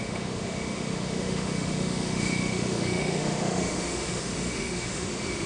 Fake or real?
fake